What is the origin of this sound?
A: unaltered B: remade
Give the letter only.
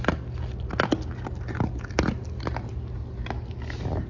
A